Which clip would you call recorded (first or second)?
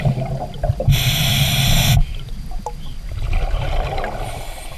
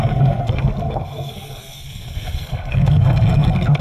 first